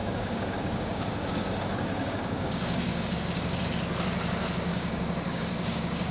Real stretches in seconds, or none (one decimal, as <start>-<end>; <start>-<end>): 3.7-4.7